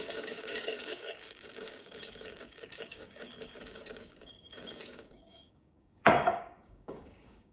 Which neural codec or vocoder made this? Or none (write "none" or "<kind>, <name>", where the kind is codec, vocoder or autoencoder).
codec, DAC